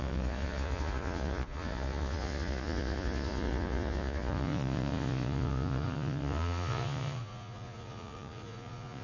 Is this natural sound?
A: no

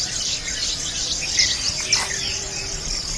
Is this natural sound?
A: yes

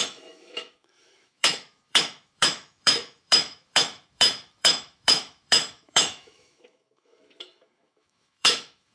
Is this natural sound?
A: no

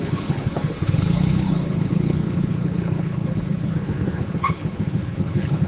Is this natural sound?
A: no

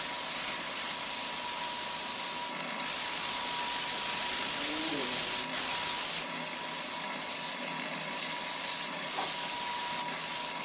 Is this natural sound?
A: yes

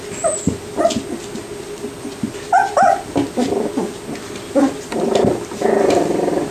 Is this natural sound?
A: yes